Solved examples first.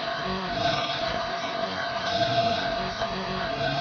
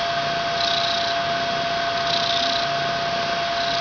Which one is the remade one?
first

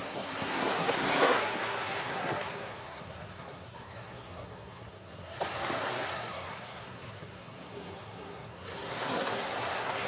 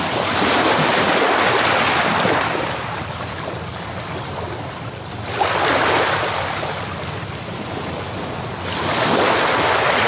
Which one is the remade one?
first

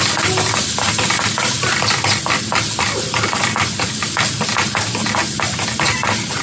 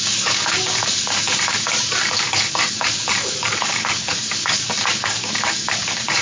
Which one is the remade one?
second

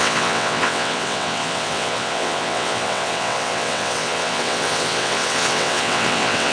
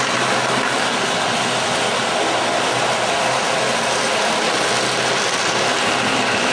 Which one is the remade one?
first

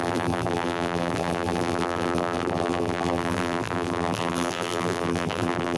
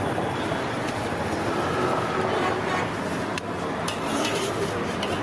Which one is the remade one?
first